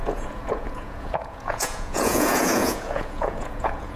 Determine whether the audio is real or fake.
fake